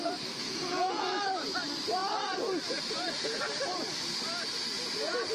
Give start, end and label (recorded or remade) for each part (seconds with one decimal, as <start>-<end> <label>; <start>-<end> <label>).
0.0-0.4 recorded; 0.4-1.2 remade; 1.2-5.3 recorded